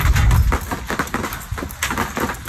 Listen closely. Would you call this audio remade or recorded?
recorded